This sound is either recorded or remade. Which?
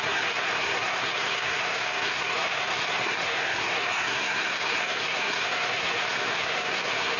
remade